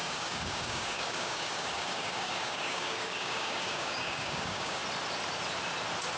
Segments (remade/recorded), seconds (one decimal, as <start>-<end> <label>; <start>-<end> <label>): 0.0-4.8 remade; 4.8-6.2 recorded